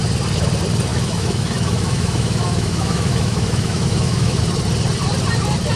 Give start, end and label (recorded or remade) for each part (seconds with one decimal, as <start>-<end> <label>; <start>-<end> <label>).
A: 0.0-0.9 recorded; 0.9-4.4 remade; 4.4-5.8 recorded